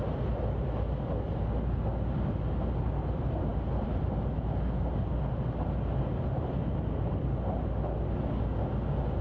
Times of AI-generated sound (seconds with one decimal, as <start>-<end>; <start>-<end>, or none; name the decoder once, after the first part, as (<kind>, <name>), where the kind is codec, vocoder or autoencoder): none